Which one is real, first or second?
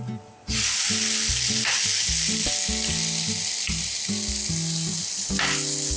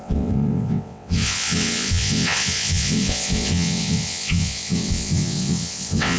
first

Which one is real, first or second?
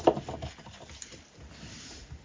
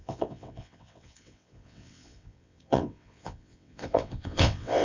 first